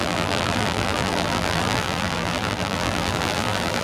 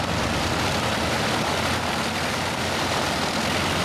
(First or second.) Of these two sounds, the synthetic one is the first